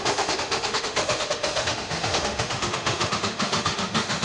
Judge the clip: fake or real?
fake